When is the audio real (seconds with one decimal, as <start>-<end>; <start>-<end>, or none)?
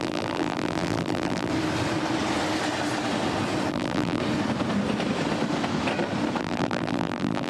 1.5-3.7; 4.2-6.4